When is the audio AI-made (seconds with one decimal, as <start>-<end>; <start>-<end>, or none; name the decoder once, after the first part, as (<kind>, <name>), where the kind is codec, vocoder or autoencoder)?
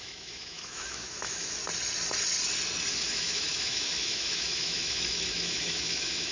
0.0-1.6 (autoencoder, DAC-VAE); 2.9-6.3